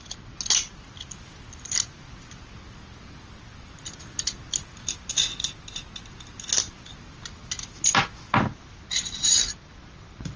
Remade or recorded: recorded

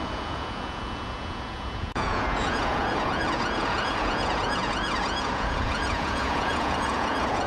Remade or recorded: remade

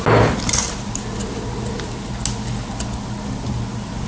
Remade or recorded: recorded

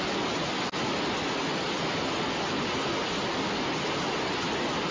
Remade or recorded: recorded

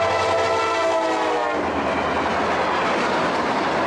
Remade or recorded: recorded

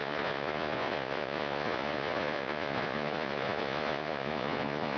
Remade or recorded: remade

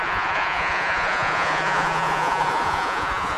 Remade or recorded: remade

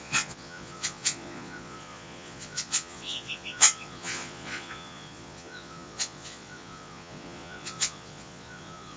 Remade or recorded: remade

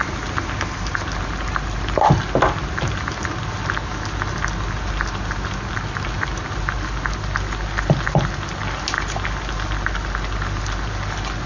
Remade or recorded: recorded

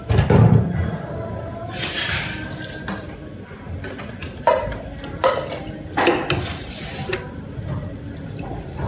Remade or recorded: recorded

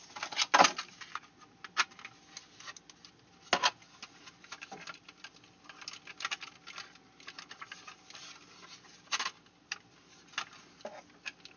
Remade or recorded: recorded